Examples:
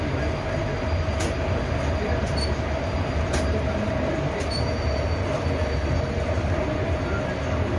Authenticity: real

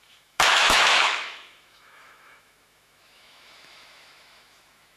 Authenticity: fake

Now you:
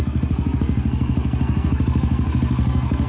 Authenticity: fake